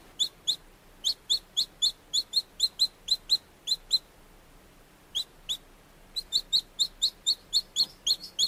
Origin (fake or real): real